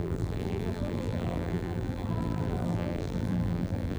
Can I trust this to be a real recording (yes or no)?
no